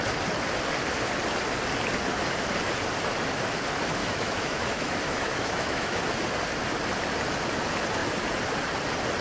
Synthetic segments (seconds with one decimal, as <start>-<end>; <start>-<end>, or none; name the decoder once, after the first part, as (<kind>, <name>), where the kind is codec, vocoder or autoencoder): 4.0-6.0 (autoencoder, DAC-VAE)